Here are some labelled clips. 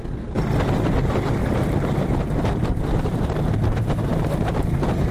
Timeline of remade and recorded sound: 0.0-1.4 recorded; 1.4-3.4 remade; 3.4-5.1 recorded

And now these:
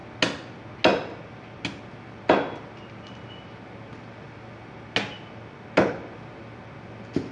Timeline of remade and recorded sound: 0.0-7.3 recorded

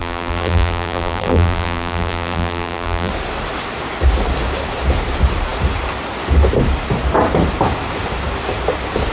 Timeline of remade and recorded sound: 0.0-3.1 remade; 3.1-9.1 recorded

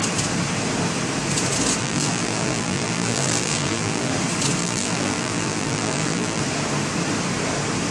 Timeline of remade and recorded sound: 0.0-1.8 recorded; 1.8-4.1 remade; 4.1-4.6 recorded; 4.6-6.4 remade; 6.4-7.9 recorded

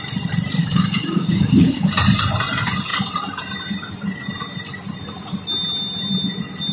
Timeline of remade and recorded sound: 0.0-0.6 recorded; 0.6-1.9 remade; 1.9-6.7 recorded

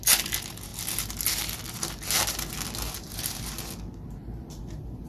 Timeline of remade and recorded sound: 0.0-4.2 recorded; 4.2-5.1 remade